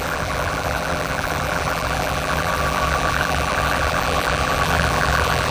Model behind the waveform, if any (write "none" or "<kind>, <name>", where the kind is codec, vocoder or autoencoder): vocoder, BigVGAN v2